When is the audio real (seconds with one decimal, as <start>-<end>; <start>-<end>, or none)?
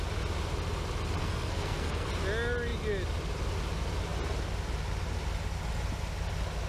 0.0-1.2; 2.1-6.7